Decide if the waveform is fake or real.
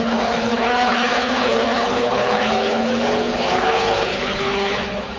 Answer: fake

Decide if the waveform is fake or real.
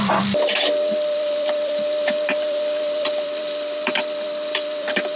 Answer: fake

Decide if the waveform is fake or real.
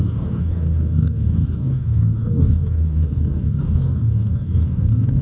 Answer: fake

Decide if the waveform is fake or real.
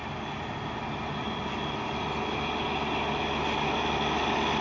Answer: real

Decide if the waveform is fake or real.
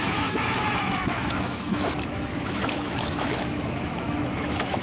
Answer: fake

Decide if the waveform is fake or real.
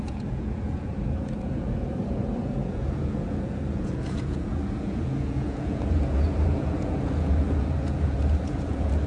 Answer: fake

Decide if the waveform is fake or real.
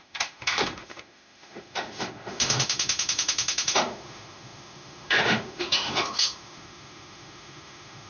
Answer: fake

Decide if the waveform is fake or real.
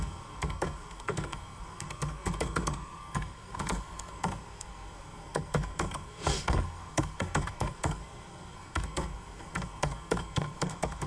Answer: fake